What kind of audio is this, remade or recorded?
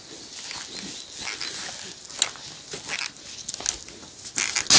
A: recorded